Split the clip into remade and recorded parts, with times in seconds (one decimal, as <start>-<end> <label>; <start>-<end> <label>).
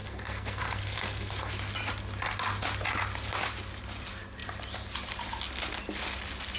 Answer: 0.0-1.5 remade; 1.5-6.6 recorded